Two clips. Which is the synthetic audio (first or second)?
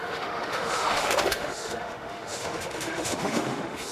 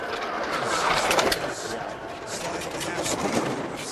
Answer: first